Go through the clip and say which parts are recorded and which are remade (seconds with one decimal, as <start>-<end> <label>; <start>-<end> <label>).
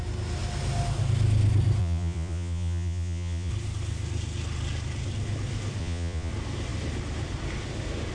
0.0-1.8 recorded; 1.8-3.5 remade; 3.5-5.8 recorded; 5.8-6.3 remade; 6.3-8.1 recorded